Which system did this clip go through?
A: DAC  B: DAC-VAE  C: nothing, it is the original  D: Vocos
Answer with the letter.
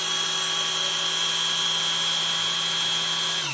C